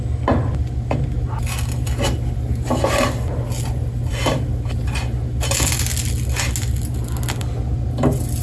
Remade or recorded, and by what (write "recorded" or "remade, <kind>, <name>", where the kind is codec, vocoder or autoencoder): recorded